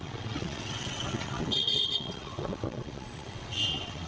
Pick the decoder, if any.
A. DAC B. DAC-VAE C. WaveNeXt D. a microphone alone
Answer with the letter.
C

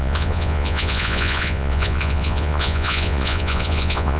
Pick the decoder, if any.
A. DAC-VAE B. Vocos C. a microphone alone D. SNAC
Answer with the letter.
B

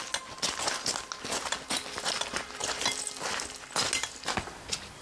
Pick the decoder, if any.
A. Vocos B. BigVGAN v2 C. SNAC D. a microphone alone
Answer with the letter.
D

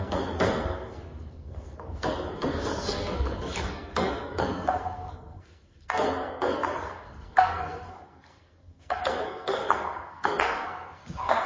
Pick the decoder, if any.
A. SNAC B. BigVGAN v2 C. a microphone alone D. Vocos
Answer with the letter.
A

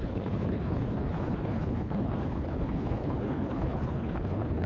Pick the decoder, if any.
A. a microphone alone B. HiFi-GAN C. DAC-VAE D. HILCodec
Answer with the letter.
D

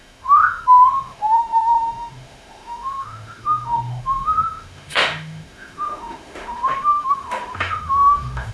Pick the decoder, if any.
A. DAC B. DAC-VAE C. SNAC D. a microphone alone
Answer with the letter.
B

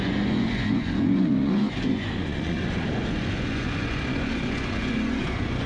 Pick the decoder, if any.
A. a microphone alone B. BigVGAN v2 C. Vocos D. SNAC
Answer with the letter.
C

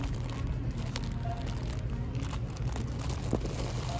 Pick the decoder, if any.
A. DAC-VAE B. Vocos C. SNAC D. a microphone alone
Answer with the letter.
D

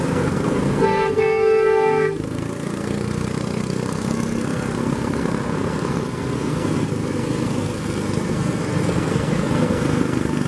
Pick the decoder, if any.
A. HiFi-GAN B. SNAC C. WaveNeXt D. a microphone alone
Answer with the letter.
B